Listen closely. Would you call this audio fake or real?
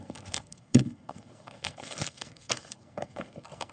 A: fake